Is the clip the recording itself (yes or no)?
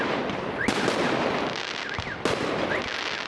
yes